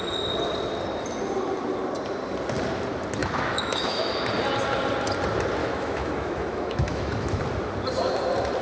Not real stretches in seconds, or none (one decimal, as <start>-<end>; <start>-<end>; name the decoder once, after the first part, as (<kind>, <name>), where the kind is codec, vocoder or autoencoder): 3.2-4.1 (autoencoder, DAC-VAE); 5.6-7.4